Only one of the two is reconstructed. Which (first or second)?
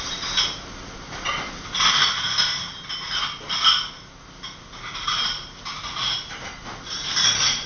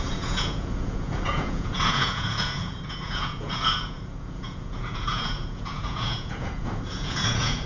second